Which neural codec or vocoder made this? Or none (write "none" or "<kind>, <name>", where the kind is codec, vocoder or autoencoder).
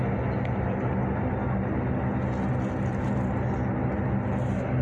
none